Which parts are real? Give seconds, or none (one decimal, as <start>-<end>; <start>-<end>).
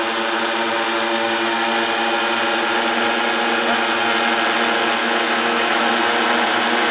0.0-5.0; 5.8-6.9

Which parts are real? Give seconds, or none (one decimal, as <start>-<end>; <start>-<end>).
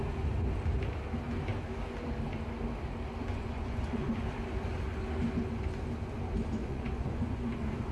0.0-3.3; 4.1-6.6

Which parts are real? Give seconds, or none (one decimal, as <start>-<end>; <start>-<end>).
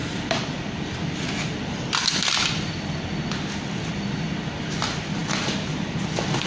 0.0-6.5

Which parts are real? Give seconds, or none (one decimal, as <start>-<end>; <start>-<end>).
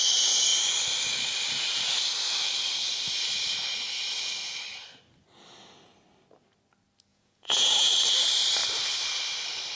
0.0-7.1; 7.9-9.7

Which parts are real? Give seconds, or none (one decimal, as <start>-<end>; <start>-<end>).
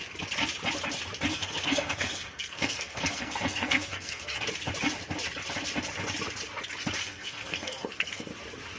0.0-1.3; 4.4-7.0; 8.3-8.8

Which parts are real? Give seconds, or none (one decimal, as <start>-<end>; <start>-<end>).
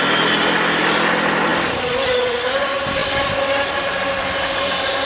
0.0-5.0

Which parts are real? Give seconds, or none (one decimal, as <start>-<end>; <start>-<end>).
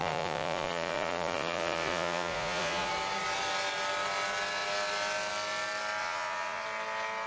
2.9-6.0; 6.6-7.3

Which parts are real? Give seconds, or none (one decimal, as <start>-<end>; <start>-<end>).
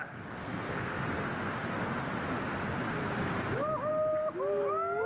0.0-0.4; 1.1-5.1